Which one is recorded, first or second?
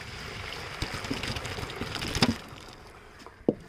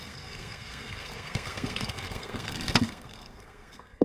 first